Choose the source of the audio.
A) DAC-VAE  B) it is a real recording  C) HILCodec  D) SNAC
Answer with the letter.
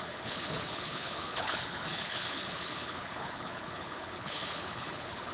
C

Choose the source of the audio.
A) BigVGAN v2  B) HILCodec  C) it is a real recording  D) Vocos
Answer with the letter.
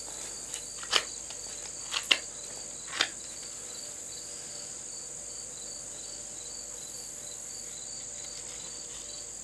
C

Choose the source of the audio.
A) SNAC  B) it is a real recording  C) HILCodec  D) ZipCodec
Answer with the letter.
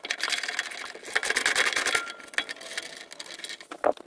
B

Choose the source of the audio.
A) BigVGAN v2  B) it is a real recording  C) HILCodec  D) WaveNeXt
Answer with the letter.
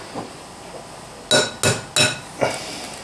B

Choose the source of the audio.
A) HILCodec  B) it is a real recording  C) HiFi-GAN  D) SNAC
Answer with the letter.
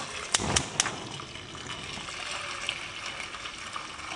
B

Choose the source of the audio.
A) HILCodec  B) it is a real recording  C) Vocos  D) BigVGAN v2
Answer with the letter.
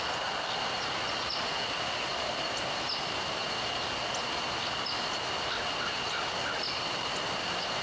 B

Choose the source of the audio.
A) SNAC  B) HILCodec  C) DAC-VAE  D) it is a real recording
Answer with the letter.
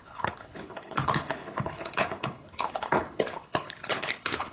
B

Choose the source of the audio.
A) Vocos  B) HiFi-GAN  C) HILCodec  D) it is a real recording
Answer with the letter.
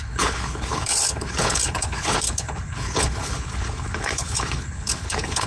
C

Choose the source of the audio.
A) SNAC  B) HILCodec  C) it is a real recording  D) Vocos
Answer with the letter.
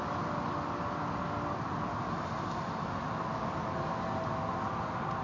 C